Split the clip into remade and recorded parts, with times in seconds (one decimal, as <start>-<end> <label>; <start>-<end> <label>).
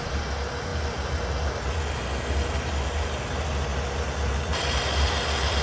0.0-5.6 recorded